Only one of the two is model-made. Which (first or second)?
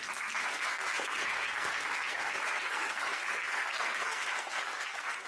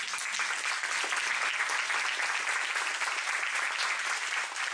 first